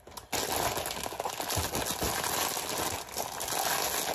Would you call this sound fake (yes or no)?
no